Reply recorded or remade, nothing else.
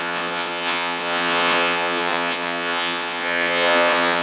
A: remade